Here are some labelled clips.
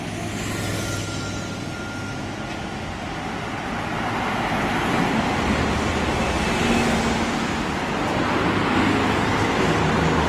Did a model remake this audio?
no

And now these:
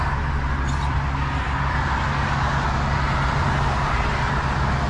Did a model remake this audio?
no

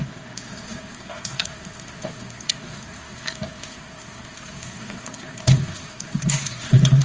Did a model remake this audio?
yes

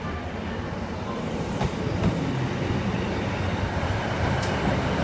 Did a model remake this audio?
no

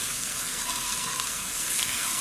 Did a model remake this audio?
yes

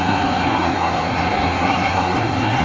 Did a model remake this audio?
yes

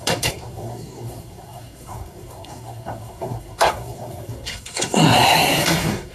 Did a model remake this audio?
yes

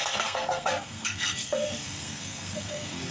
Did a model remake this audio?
yes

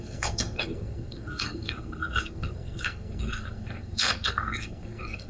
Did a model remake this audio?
yes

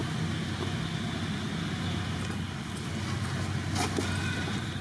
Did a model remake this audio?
no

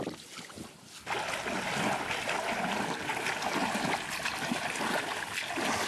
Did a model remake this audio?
no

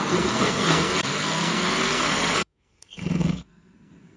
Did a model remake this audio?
yes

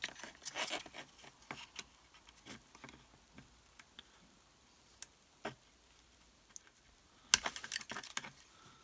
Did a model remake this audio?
no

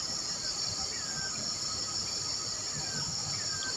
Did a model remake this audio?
no